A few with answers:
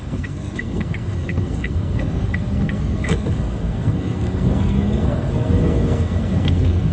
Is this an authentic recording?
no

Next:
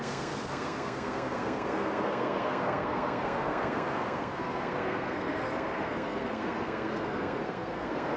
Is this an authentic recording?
no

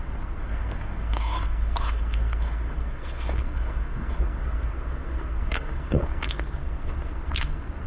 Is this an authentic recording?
no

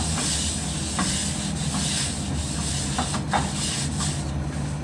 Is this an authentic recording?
yes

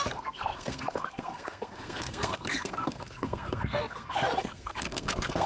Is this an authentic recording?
no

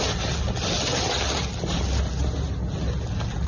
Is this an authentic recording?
yes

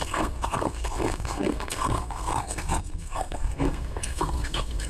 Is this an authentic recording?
no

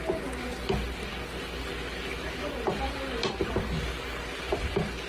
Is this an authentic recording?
yes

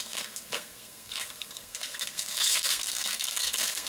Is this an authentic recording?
no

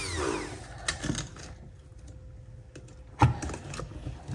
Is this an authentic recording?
yes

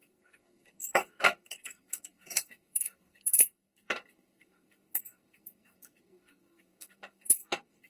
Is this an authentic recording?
no